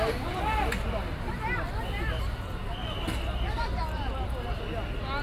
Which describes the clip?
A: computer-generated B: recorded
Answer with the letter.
B